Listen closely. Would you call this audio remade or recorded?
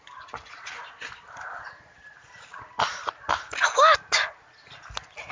recorded